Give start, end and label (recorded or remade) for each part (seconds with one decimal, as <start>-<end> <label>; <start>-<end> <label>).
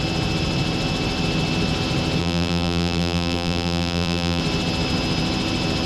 0.0-2.2 recorded; 2.2-4.4 remade; 4.4-5.9 recorded